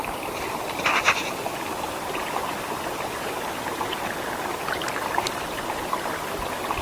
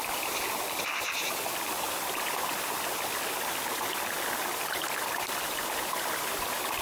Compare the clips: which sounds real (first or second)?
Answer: second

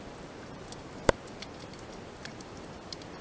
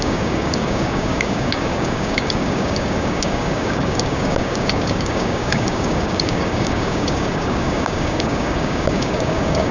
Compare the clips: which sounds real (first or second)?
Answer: first